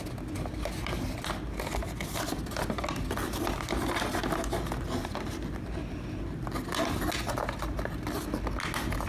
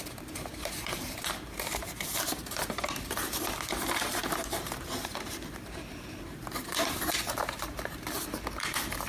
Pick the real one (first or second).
first